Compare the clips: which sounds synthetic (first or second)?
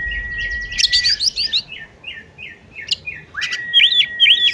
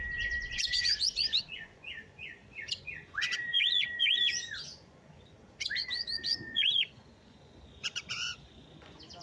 second